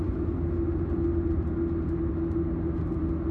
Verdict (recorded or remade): recorded